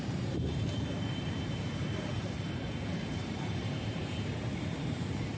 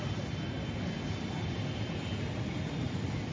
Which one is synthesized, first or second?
first